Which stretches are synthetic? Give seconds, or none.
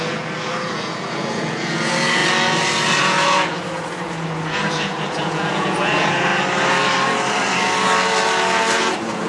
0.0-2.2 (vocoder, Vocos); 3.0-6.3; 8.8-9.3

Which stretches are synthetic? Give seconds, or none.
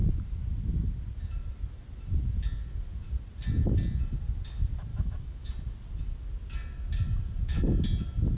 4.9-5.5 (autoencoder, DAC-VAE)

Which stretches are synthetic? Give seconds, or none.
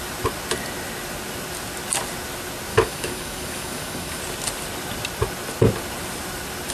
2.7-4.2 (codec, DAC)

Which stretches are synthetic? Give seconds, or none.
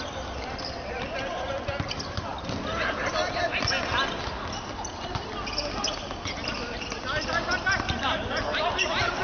none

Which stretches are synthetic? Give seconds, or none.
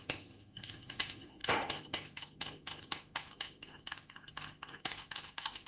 0.0-5.7 (autoencoder, DAC-VAE)